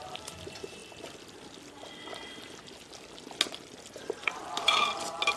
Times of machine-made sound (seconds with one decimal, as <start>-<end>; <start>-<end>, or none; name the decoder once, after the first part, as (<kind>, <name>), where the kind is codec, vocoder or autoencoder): 0.0-0.8 (vocoder, BigVGAN v2); 4.0-4.4